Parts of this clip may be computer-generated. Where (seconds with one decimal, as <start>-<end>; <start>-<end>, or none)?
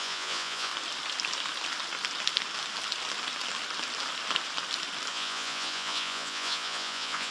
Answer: 0.0-0.7; 5.1-7.3